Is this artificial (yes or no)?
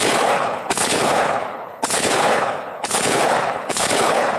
yes